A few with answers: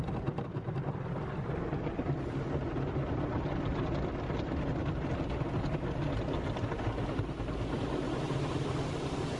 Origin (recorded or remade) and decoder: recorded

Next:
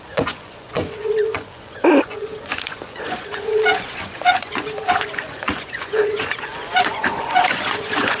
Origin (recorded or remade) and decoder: remade, vocoder, Vocos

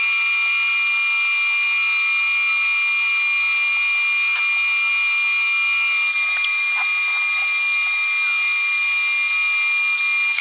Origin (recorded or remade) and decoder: recorded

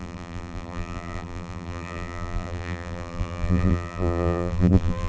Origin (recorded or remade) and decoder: remade, vocoder, BigVGAN v2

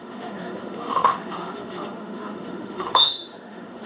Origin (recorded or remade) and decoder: remade, autoencoder, DAC-VAE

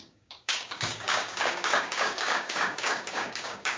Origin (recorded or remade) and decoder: remade, codec, DAC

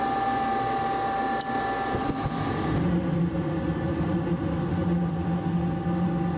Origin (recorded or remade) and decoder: recorded